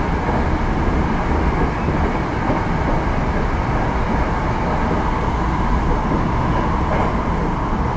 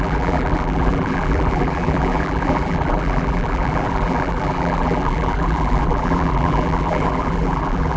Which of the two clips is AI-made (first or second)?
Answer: second